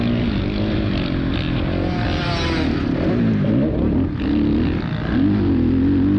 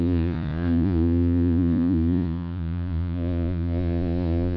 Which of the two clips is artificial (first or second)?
second